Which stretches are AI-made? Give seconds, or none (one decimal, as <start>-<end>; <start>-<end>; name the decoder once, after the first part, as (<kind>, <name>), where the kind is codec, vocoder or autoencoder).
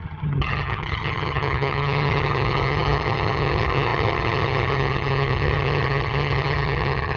0.0-7.2 (vocoder, HiFi-GAN)